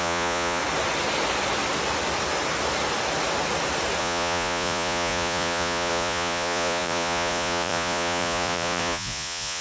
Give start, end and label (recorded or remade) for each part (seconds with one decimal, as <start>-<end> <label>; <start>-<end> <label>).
0.0-0.6 remade; 0.6-4.0 recorded; 4.0-9.6 remade